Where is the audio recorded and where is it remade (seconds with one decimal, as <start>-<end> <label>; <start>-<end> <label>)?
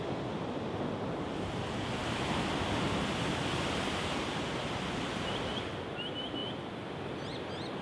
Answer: 0.0-6.4 recorded; 6.4-7.0 remade; 7.0-7.8 recorded